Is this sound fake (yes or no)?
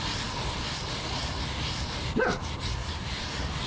no